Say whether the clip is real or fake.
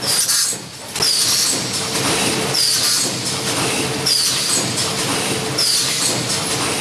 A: real